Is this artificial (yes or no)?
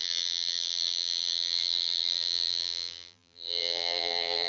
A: yes